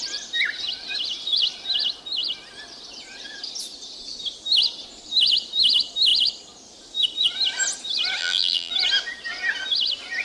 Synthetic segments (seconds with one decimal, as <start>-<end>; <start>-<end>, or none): 8.2-8.7